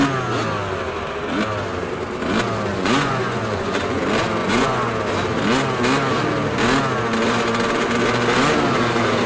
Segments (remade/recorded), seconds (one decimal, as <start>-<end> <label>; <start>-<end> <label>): 0.0-2.7 recorded; 2.7-4.0 remade; 4.0-4.4 recorded; 4.4-4.9 remade; 4.9-9.3 recorded